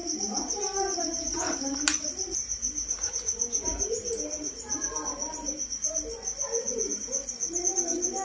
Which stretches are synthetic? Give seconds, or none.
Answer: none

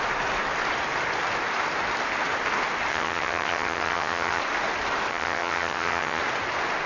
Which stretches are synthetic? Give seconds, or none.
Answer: 2.9-4.4 (vocoder, HiFi-GAN); 5.1-6.2

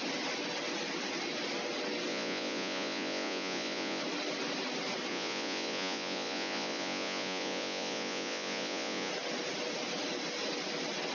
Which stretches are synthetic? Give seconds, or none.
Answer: 2.1-4.0 (vocoder, Vocos); 5.1-9.1

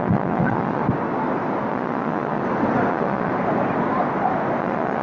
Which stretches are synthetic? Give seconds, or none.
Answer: 0.0-0.8 (vocoder, Vocos); 1.7-2.4; 2.9-3.3; 4.6-5.0

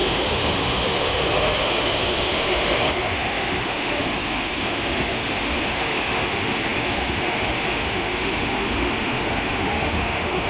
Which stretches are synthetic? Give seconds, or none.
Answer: 0.0-10.5 (autoencoder, DAC-VAE)

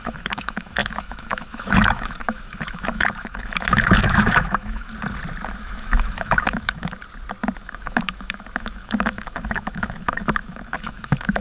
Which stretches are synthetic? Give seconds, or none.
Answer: 0.0-4.9 (autoencoder, DAC-VAE); 5.5-7.0; 7.6-11.4

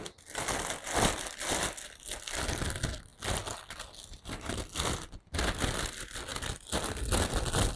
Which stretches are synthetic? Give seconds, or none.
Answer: none